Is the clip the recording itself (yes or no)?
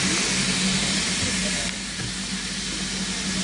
yes